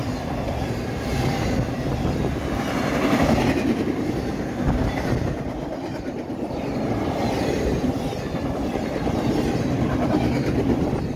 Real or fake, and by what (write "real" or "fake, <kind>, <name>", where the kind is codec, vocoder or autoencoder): real